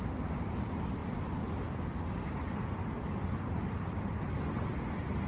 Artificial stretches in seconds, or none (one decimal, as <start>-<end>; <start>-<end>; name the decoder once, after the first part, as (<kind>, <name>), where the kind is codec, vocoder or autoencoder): none